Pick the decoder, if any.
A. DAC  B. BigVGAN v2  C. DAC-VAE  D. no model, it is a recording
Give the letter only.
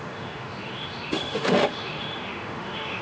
C